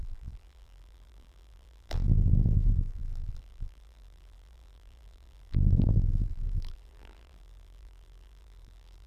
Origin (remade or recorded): remade